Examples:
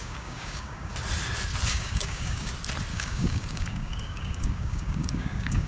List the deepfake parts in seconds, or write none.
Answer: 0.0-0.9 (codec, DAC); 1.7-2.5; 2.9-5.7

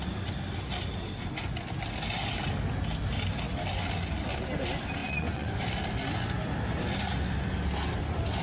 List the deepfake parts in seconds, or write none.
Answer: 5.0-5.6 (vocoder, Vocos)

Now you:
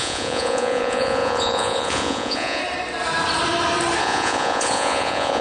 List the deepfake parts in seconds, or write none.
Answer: 0.0-2.6 (vocoder, Vocos); 4.0-5.4

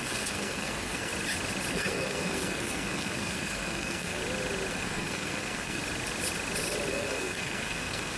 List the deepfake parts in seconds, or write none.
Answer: 0.0-1.1 (codec, SNAC); 1.7-4.2; 4.7-5.8; 6.9-8.2

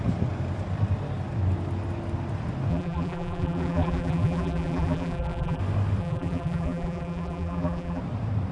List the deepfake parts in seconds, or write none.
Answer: 2.7-5.6 (vocoder, BigVGAN v2); 6.0-8.0

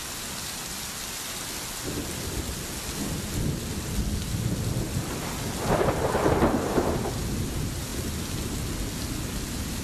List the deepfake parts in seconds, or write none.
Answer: none